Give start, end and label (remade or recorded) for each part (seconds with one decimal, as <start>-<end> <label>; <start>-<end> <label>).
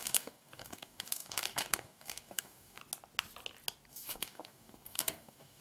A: 0.0-2.8 remade; 2.8-3.9 recorded; 3.9-5.6 remade